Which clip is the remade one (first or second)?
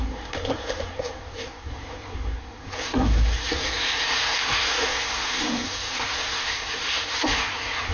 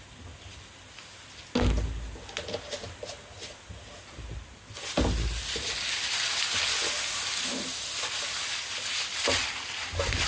first